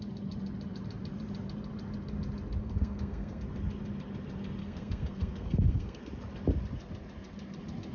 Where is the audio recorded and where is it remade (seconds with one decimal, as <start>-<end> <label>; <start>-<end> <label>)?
0.0-2.6 recorded; 2.6-3.4 remade; 3.4-4.6 recorded; 4.6-6.0 remade; 6.0-7.9 recorded